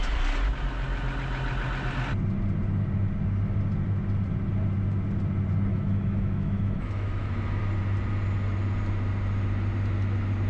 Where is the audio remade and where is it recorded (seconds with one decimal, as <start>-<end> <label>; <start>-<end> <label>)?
0.0-5.7 recorded; 5.7-7.6 remade; 7.6-10.5 recorded